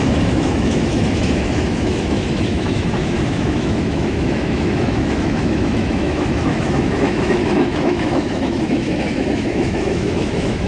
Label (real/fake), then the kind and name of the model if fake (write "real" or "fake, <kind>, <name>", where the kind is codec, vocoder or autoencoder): fake, autoencoder, DAC-VAE